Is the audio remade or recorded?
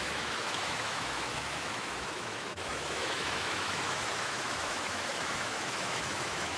remade